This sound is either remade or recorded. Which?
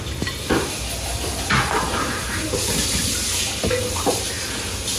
recorded